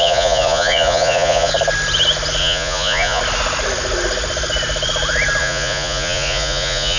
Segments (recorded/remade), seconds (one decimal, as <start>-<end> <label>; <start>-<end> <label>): 0.0-1.5 remade; 1.5-2.4 recorded; 2.4-3.2 remade; 3.2-5.4 recorded; 5.4-7.0 remade